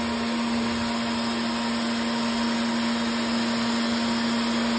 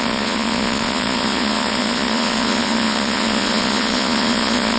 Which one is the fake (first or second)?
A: second